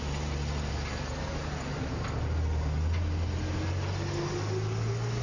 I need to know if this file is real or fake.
real